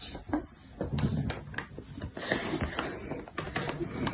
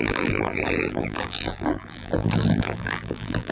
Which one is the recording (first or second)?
first